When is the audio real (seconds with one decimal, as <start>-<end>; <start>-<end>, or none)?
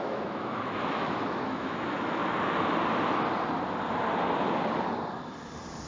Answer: 2.2-5.9